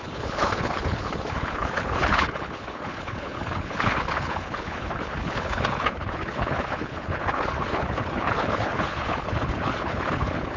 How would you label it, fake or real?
fake